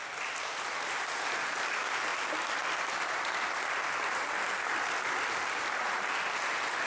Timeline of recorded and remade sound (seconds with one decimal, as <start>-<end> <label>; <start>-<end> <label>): 0.0-2.1 recorded; 2.1-5.7 remade; 5.7-6.9 recorded